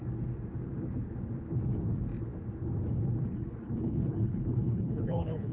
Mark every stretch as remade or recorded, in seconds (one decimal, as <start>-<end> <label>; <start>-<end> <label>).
0.0-3.3 recorded; 3.3-5.5 remade